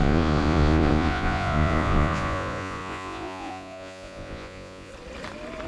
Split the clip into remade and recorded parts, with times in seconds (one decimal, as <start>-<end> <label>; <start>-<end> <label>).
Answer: 0.0-4.9 remade; 4.9-5.7 recorded